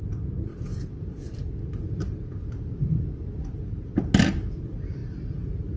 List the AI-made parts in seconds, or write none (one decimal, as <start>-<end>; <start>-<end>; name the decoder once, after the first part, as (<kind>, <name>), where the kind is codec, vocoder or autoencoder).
0.5-1.5 (vocoder, BigVGAN v2); 2.4-3.4; 5.0-5.8